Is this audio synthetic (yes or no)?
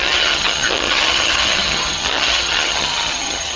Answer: yes